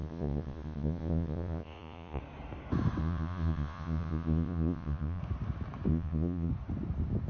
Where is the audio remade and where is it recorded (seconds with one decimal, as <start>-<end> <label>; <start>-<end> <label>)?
0.0-2.2 remade; 2.2-3.0 recorded; 3.0-5.2 remade; 5.2-5.9 recorded; 5.9-6.5 remade; 6.5-7.3 recorded